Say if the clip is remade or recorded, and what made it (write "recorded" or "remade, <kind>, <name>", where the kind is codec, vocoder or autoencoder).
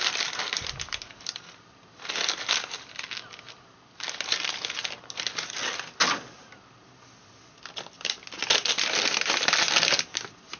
recorded